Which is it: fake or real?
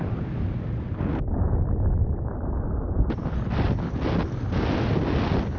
real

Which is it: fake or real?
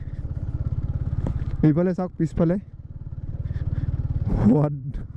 fake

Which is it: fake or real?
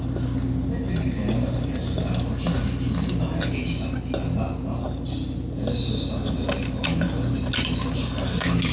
real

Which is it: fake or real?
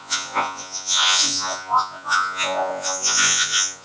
fake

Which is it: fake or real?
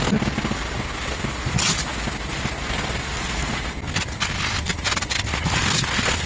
real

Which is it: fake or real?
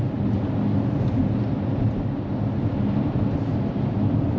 real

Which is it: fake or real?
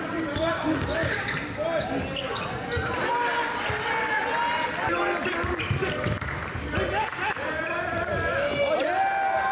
real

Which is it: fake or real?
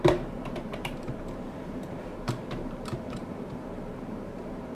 fake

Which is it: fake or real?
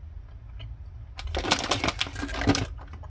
real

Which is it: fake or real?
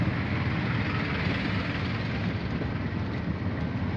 real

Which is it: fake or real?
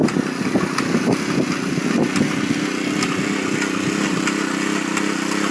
real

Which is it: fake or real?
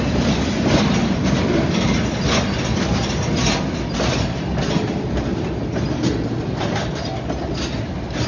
real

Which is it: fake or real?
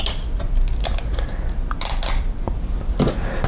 real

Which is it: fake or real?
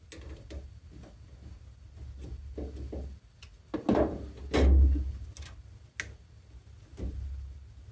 real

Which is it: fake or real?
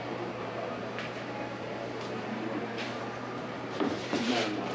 fake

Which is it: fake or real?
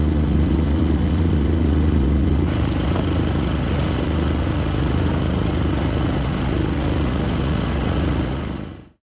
fake